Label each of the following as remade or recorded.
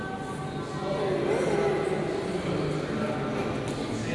recorded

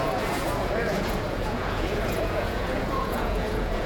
remade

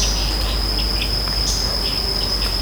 recorded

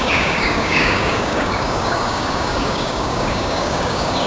remade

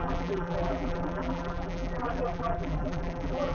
remade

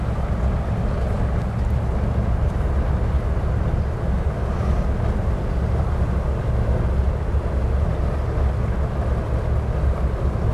recorded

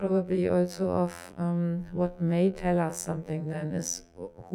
remade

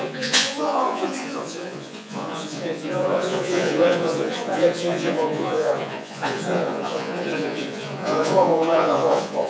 remade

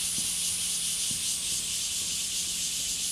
recorded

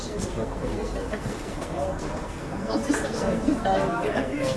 remade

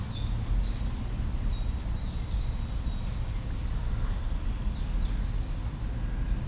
recorded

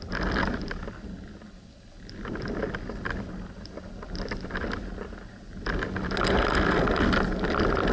recorded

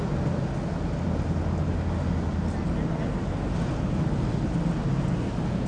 recorded